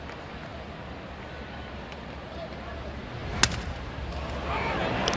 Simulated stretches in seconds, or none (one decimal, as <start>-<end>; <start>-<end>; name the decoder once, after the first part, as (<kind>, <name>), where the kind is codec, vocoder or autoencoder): none